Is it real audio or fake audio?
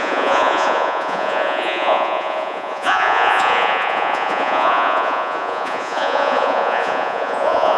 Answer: fake